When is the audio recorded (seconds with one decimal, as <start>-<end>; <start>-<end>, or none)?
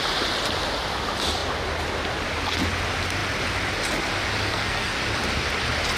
0.0-4.5; 5.0-6.0